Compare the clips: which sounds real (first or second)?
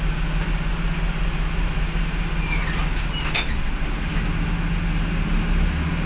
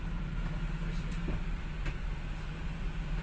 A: first